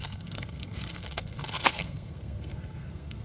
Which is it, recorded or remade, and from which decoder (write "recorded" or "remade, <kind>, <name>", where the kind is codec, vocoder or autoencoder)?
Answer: remade, codec, SNAC